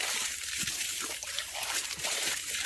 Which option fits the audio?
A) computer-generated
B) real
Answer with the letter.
A